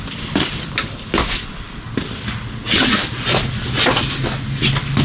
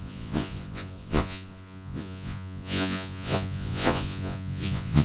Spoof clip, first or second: second